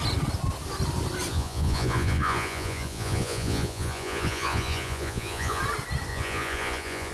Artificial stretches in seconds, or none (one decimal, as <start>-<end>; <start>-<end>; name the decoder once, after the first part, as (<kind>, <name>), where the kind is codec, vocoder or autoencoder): 1.3-5.6 (vocoder, Vocos); 6.1-7.1